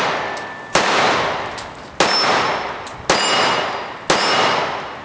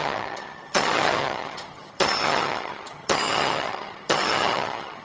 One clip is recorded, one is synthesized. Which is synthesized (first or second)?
second